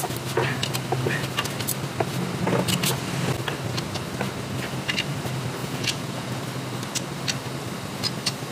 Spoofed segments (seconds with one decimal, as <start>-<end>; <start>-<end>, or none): 5.6-6.4